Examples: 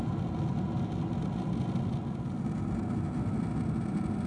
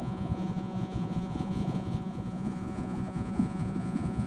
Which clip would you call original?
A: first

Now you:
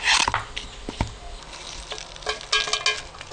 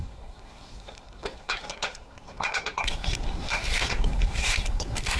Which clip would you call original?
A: first